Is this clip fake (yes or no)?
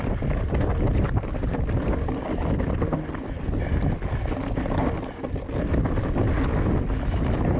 no